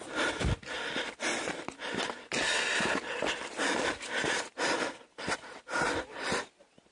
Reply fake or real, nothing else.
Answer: real